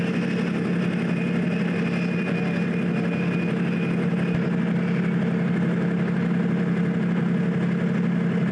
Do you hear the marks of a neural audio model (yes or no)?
no